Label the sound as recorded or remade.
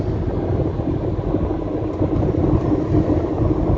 recorded